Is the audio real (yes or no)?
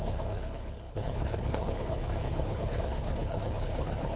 no